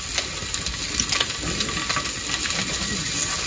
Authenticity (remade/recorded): recorded